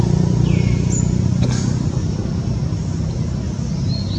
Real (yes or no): yes